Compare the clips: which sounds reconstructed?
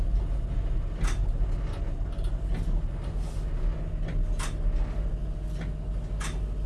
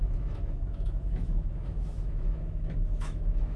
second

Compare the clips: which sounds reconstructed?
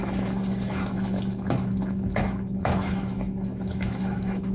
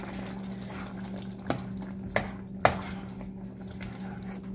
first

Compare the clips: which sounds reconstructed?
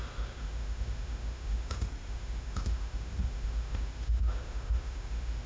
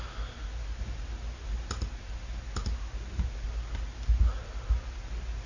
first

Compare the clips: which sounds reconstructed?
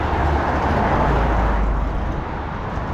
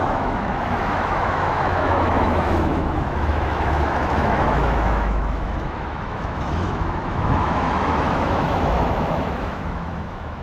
second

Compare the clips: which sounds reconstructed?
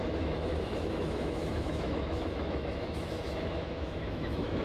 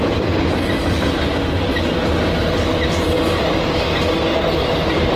first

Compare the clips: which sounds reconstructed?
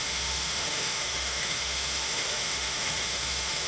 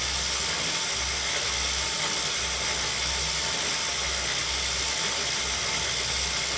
first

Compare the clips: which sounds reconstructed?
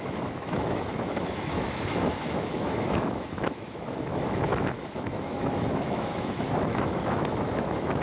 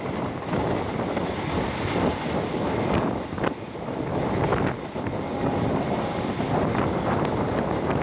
first